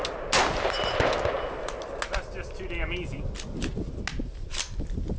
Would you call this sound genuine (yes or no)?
yes